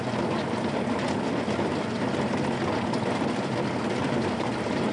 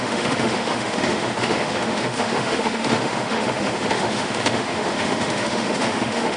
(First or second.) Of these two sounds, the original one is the first